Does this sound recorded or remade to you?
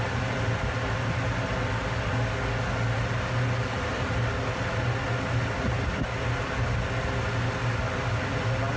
recorded